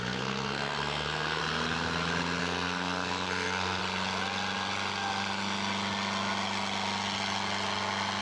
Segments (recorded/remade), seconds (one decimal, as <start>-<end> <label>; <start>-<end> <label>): 0.0-1.4 remade; 1.4-2.4 recorded; 2.4-3.8 remade; 3.8-8.2 recorded